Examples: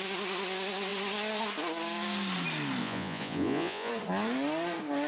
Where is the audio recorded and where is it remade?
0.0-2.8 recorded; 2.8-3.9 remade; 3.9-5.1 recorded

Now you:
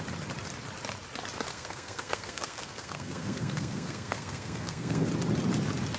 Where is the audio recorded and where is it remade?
0.0-1.5 recorded; 1.5-5.1 remade; 5.1-6.0 recorded